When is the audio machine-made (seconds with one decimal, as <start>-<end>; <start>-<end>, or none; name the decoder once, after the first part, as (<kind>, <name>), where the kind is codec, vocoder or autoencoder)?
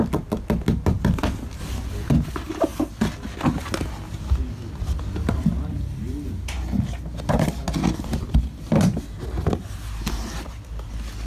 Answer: 1.6-2.1 (vocoder, BigVGAN v2)